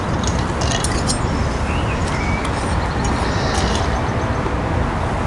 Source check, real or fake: real